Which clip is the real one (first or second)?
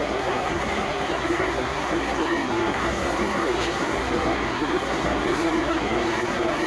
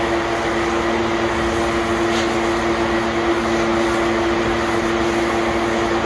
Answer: second